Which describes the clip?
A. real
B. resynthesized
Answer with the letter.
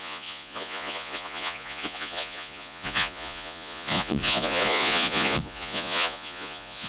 B